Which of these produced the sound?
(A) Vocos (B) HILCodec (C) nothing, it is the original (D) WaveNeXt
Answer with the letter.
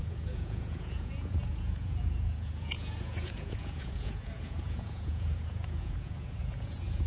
A